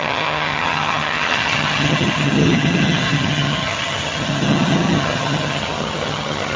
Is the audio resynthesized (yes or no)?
yes